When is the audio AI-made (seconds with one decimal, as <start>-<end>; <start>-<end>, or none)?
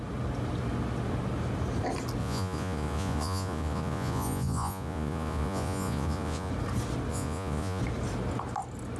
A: 2.2-6.5; 7.1-7.8